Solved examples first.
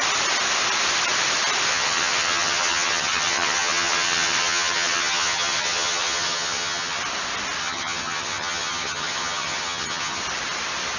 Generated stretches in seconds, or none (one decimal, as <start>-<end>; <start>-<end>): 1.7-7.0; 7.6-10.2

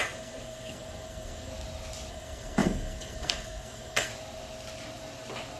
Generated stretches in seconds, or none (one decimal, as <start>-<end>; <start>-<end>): 0.0-1.5; 2.1-4.1

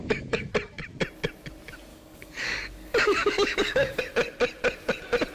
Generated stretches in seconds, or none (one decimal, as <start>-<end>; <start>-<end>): 0.0-0.5; 1.9-4.0

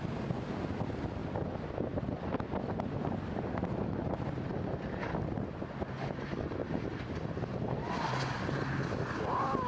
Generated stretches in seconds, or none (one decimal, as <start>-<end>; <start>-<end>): 6.6-7.9

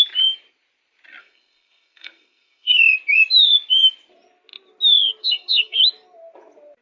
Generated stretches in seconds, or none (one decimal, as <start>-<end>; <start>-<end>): 1.2-2.8; 5.2-5.8

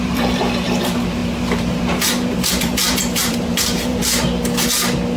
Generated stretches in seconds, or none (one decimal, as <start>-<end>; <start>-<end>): 0.0-4.0

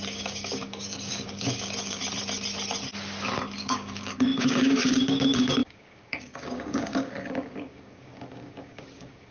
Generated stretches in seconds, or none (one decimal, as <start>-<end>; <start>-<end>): 0.0-2.0; 3.6-9.3

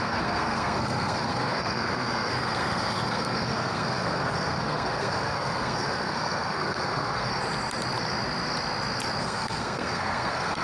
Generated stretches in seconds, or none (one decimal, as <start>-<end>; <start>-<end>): 0.0-7.3; 9.2-10.6